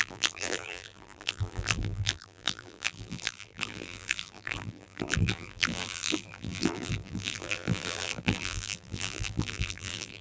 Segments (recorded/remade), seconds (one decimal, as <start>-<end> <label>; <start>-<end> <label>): 0.0-10.2 remade

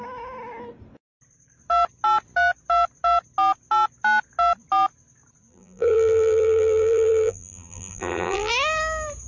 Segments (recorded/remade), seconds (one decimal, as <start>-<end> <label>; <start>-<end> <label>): 0.0-5.5 recorded; 5.5-8.5 remade; 8.5-9.3 recorded

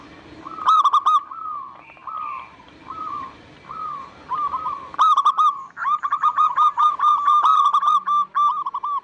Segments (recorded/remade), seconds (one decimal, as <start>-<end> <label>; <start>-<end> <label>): 0.0-2.0 recorded; 2.0-6.8 remade; 6.8-9.0 recorded

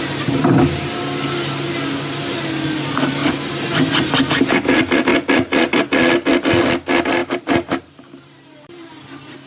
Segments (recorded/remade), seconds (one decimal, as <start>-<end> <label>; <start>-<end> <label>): 0.0-7.2 recorded; 7.2-8.9 remade; 8.9-9.5 recorded

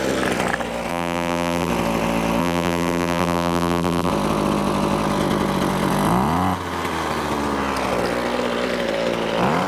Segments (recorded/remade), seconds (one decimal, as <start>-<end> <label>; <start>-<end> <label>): 0.0-0.9 recorded; 0.9-1.7 remade; 1.7-2.4 recorded; 2.4-4.1 remade; 4.1-9.7 recorded

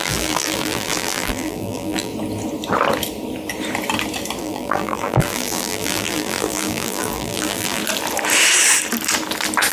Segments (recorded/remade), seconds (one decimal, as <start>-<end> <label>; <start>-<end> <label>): 0.0-2.1 remade; 2.1-4.4 recorded; 4.4-7.8 remade; 7.8-9.7 recorded

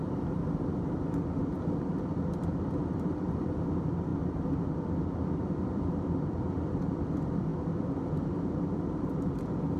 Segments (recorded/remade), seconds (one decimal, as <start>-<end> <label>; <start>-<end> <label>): 0.0-0.4 remade; 0.4-3.3 recorded; 3.3-9.8 remade